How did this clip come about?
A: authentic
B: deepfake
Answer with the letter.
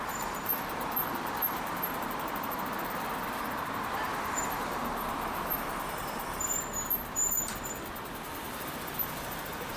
B